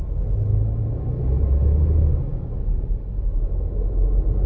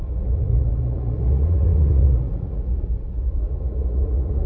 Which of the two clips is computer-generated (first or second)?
second